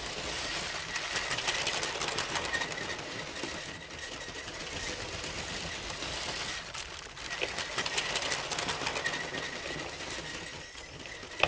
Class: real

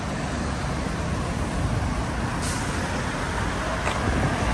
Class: real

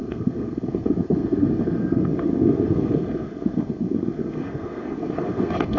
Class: fake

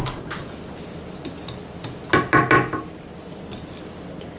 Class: real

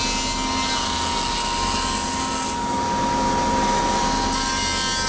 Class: real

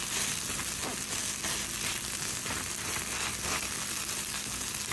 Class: real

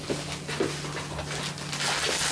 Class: real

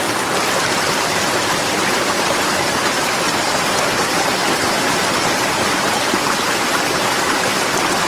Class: real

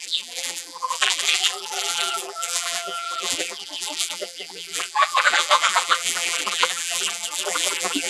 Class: fake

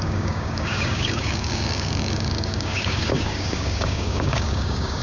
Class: fake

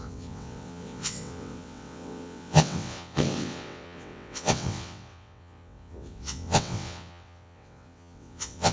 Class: fake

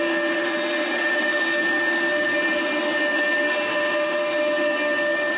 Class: real